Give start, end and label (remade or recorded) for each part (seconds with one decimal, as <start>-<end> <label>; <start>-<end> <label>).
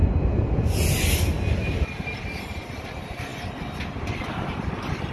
0.0-5.1 recorded